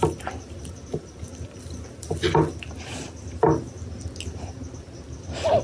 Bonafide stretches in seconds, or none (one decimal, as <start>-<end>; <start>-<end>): 2.3-5.6